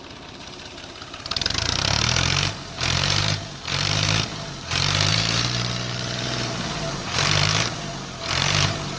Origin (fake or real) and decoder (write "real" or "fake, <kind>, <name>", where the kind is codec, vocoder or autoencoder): fake, vocoder, BigVGAN v2